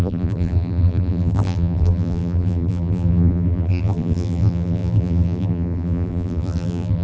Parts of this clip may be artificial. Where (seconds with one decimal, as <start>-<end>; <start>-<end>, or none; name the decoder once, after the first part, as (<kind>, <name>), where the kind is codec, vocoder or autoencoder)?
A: 0.0-7.0 (vocoder, BigVGAN v2)